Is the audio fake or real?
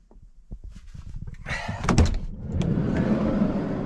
real